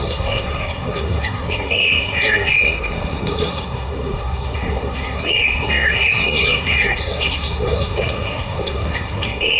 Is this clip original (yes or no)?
no